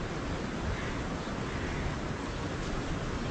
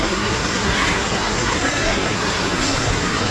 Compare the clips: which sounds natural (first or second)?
first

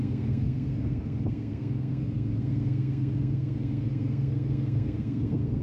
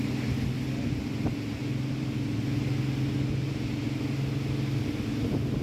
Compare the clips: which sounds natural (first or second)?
second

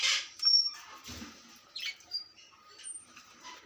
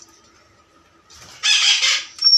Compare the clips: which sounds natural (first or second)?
second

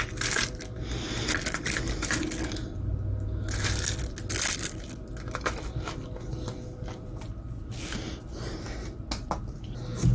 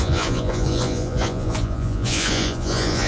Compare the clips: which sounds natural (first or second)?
first